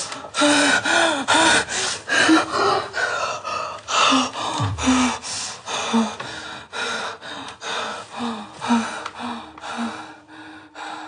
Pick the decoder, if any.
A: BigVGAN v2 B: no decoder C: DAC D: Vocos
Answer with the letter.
B